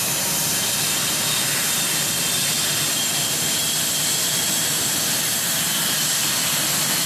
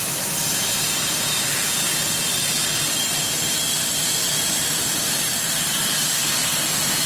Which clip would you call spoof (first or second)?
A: first